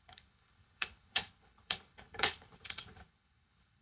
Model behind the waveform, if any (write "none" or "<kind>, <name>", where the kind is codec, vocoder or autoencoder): codec, HILCodec